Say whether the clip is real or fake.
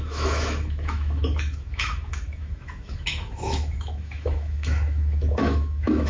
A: fake